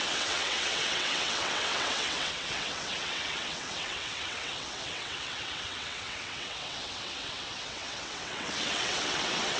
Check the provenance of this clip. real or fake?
fake